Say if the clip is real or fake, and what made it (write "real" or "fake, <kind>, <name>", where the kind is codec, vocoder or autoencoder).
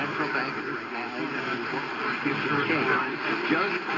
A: real